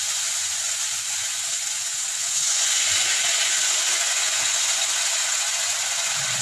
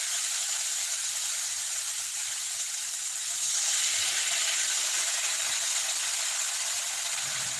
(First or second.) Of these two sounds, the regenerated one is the first